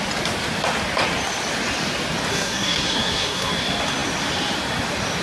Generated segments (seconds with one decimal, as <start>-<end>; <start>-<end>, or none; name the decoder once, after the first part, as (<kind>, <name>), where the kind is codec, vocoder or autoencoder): 2.3-3.5 (codec, SNAC)

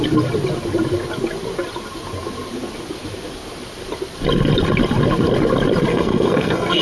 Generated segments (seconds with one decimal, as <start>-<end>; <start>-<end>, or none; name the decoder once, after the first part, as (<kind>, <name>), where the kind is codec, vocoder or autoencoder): 5.9-6.8 (codec, SNAC)

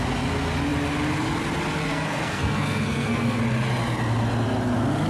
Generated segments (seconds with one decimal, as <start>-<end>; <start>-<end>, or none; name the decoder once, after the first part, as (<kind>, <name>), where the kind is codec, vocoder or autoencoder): 1.9-3.4 (codec, SNAC)

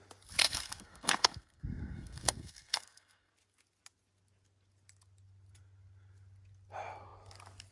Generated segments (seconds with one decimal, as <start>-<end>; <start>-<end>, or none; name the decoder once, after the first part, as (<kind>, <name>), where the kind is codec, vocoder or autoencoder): 0.4-3.3 (codec, SNAC)

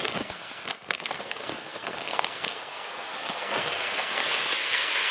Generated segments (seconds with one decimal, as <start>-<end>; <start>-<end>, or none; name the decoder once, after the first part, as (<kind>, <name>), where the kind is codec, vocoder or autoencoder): 0.0-5.1 (codec, SNAC)

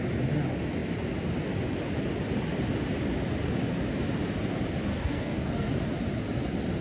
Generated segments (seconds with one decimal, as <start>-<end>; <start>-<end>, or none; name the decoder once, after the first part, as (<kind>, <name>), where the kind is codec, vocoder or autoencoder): 4.9-5.7 (codec, SNAC)